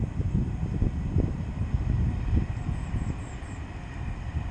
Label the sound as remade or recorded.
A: recorded